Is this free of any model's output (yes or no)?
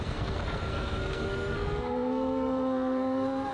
no